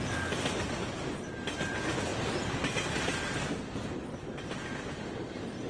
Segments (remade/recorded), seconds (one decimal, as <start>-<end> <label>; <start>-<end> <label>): 0.0-5.7 recorded